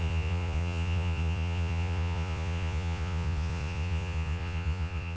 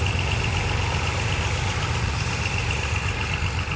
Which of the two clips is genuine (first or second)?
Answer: second